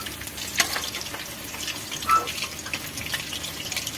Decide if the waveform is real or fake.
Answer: real